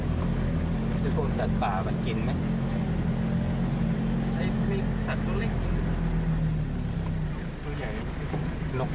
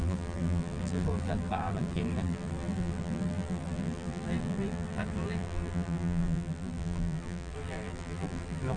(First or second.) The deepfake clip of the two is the second